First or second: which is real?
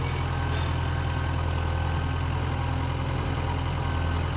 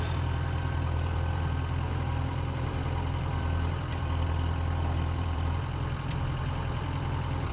first